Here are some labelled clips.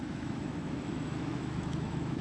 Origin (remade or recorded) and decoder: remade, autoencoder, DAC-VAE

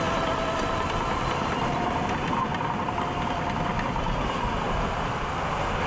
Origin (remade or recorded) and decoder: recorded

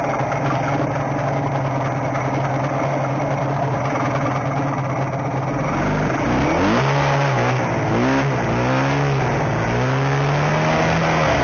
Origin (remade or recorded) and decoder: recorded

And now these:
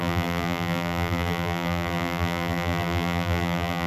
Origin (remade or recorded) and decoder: remade, vocoder, BigVGAN v2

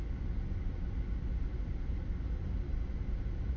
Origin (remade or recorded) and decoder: recorded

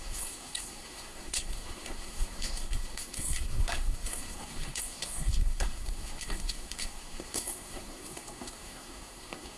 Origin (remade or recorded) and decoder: remade, codec, SNAC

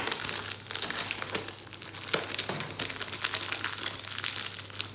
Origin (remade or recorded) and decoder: recorded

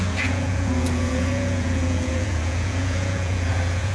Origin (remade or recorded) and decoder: remade, vocoder, Vocos